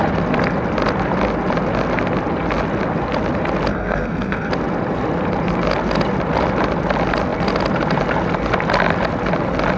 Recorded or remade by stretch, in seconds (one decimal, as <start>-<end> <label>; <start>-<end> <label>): 0.0-3.7 recorded; 3.7-4.5 remade; 4.5-9.8 recorded